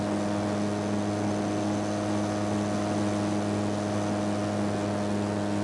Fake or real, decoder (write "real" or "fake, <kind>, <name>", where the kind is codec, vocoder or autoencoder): real